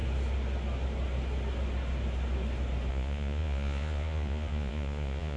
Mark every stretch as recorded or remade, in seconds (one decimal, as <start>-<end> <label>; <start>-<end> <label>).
0.0-2.9 recorded; 2.9-5.4 remade